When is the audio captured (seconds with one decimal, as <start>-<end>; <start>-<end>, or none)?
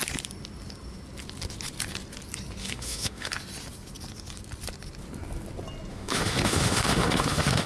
0.0-2.6; 3.3-5.9